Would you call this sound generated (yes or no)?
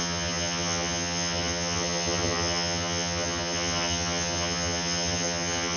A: yes